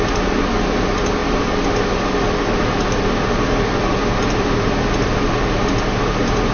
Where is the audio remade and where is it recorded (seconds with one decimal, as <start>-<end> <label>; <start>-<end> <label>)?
0.0-1.2 recorded; 1.2-5.1 remade; 5.1-6.5 recorded